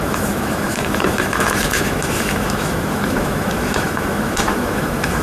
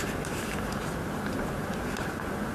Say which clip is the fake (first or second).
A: first